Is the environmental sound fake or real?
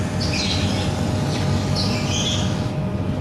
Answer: real